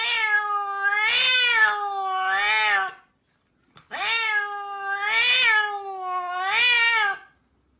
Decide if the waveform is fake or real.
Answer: real